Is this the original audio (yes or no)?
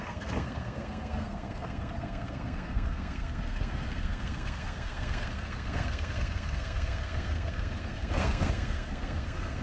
no